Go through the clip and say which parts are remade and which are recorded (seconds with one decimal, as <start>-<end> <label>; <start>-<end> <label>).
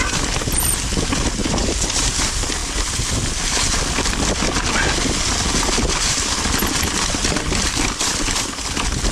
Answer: 0.0-9.1 recorded